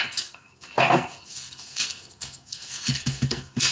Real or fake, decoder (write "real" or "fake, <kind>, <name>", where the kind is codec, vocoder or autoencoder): fake, codec, SNAC